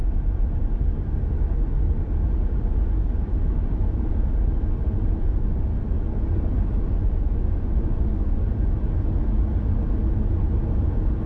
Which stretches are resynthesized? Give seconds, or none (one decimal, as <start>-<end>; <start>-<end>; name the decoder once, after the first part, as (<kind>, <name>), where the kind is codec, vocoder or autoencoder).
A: 6.9-8.4 (vocoder, Vocos)